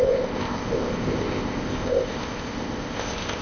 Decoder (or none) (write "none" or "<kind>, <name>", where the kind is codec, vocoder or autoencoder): codec, ZipCodec